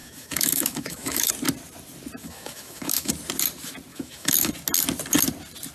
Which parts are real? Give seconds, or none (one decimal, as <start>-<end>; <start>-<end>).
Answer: 1.3-2.2; 3.1-3.9; 4.5-5.7